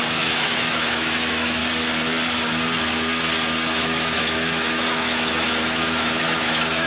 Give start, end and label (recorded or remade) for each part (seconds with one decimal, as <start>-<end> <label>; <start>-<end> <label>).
0.0-1.6 remade; 1.6-3.8 recorded; 3.8-6.9 remade